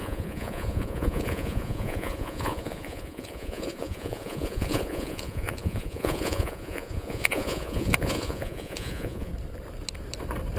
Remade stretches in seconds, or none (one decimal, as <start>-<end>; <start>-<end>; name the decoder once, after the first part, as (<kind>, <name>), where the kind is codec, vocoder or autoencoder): 0.0-9.3 (vocoder, Vocos)